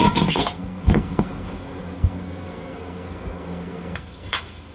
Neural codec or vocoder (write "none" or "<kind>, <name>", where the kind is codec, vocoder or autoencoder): codec, SNAC